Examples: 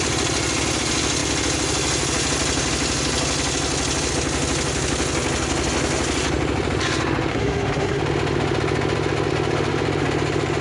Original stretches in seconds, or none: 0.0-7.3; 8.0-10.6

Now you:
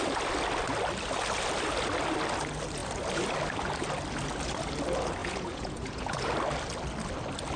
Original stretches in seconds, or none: 0.0-5.2; 6.3-7.6